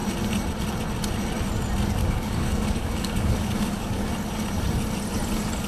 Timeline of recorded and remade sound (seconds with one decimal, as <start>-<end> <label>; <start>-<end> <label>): 0.0-2.0 recorded; 2.0-4.1 remade; 4.1-5.7 recorded